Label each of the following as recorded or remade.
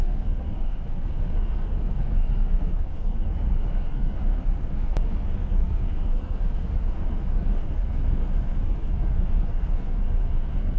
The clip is remade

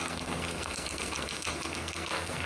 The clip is remade